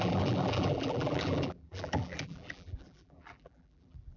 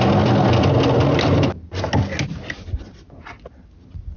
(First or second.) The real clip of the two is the second